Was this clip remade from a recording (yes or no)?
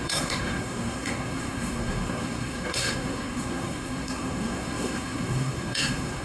yes